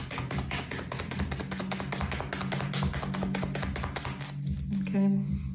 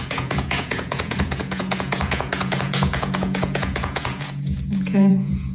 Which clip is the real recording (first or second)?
first